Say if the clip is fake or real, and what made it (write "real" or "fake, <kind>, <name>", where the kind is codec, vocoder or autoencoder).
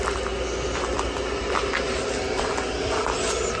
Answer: real